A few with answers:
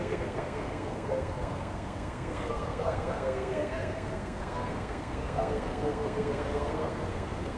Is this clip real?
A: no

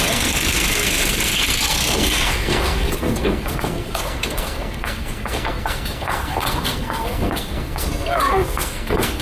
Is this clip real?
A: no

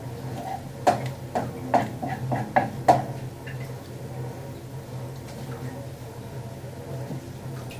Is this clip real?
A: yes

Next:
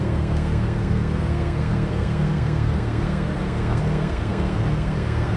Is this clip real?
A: no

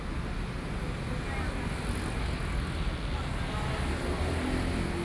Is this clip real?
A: yes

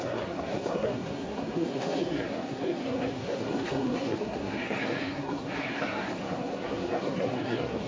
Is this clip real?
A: no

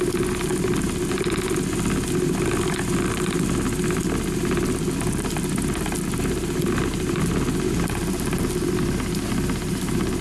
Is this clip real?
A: yes